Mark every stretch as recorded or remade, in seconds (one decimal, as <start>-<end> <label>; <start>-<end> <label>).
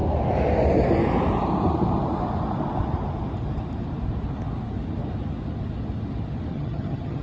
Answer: 0.0-6.5 recorded; 6.5-7.2 remade